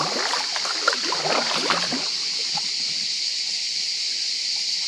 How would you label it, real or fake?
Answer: real